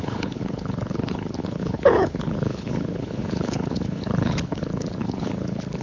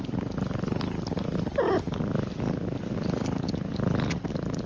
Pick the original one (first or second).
second